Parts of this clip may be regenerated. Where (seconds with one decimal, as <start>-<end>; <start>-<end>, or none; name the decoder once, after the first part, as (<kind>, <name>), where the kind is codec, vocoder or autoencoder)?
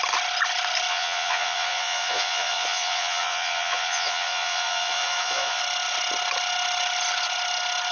0.9-5.6 (vocoder, Vocos)